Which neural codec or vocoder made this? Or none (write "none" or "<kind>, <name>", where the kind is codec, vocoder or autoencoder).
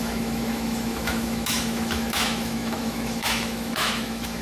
autoencoder, DAC-VAE